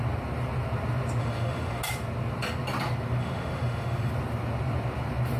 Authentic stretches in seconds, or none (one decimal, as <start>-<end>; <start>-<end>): 0.0-1.2; 1.8-3.2; 4.1-5.4